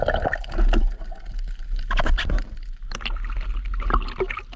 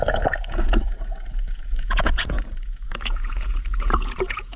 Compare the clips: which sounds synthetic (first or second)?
second